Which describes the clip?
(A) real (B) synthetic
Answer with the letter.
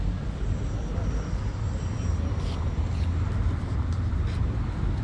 A